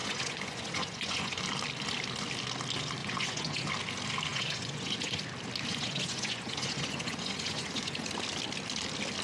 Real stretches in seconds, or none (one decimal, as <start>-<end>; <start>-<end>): 1.4-3.0; 3.7-4.3; 5.2-5.7; 8.1-9.2